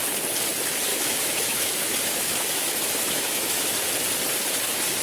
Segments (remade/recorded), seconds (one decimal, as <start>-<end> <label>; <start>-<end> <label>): 0.0-0.9 recorded; 0.9-3.9 remade; 3.9-5.0 recorded

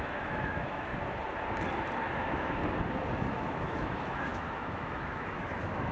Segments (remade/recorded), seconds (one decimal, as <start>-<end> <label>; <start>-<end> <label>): 0.0-0.9 remade; 0.9-2.1 recorded; 2.1-2.6 remade; 2.6-3.3 recorded; 3.3-5.9 remade

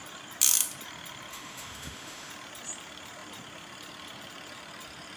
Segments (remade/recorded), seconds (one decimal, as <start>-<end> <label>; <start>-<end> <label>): 0.0-1.3 recorded; 1.3-2.3 remade; 2.3-5.2 recorded

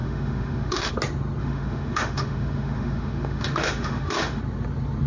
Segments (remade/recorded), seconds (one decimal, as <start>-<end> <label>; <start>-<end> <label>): 0.0-0.9 remade; 0.9-1.4 recorded; 1.4-4.4 remade; 4.4-5.1 recorded

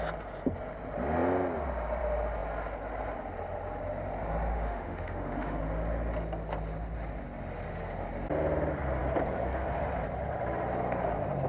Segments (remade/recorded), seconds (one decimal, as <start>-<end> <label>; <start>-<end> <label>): 0.0-4.5 recorded; 4.5-5.6 remade; 5.6-11.5 recorded